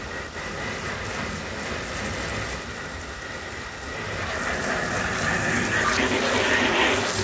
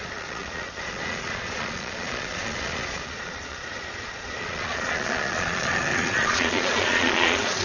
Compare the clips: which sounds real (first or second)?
first